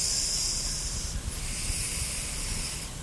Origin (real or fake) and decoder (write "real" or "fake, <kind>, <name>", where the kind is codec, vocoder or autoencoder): real